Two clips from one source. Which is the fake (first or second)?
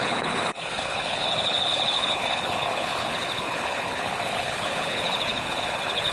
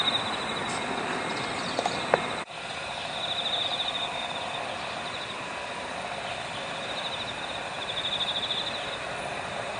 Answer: first